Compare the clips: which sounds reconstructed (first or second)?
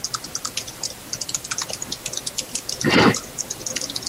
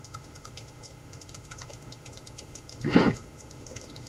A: second